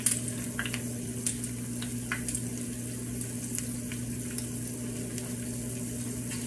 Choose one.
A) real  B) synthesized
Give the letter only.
A